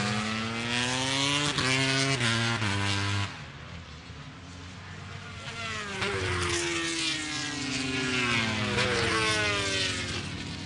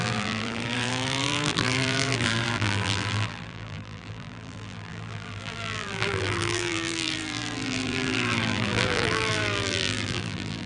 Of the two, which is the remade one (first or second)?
second